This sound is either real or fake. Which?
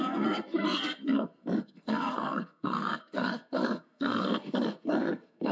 fake